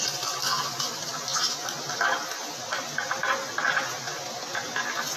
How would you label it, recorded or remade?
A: recorded